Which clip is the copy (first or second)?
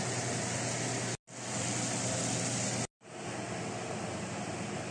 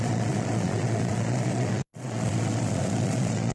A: second